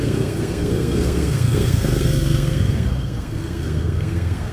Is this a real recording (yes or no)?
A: no